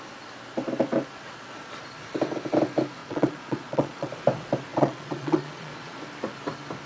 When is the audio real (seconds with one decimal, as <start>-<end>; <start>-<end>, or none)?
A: 0.0-3.0; 4.1-4.7; 6.0-6.9

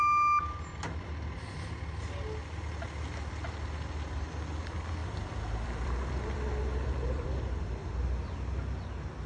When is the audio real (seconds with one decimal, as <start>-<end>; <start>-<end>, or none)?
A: 0.0-0.7; 1.6-5.0; 7.9-9.3

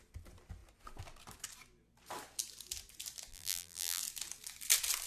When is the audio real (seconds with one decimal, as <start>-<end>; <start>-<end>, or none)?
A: 0.0-3.3; 4.0-5.1